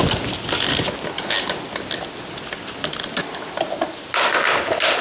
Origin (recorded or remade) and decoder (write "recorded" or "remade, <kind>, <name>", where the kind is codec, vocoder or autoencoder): recorded